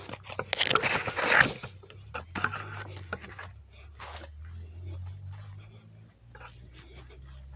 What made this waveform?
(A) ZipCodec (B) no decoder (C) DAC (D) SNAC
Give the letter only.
B